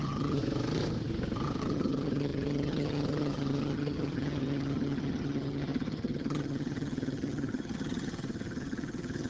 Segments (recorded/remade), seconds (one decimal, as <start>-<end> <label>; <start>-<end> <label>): 0.0-0.4 remade; 0.4-1.6 recorded; 1.6-9.3 remade